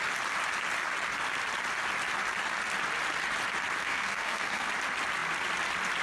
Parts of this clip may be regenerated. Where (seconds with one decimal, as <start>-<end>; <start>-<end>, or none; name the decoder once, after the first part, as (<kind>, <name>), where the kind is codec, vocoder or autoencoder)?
3.8-4.7 (codec, SNAC)